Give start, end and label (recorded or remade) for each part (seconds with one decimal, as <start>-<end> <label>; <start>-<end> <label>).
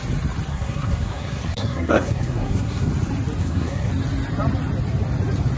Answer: 0.0-0.5 recorded; 0.5-2.9 remade; 2.9-3.4 recorded; 3.4-3.9 remade; 3.9-5.6 recorded